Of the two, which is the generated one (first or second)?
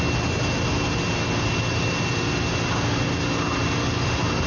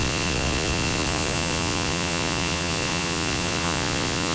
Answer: second